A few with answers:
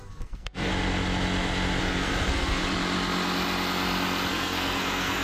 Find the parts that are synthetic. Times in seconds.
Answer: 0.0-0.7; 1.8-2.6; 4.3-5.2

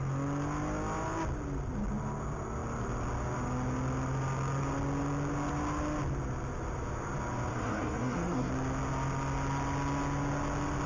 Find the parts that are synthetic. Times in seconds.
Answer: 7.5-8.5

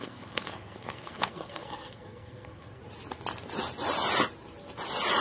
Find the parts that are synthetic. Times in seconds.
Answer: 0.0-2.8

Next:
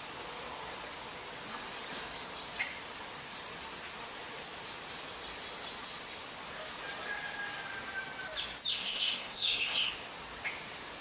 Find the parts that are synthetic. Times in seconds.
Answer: 8.7-9.9